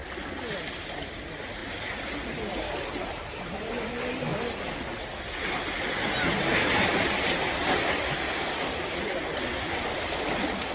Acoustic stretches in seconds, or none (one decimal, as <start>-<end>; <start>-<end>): 0.0-10.7